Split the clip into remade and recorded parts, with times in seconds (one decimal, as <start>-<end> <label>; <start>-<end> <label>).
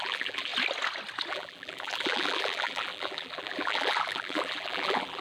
0.0-0.5 remade; 0.5-1.3 recorded; 1.3-5.2 remade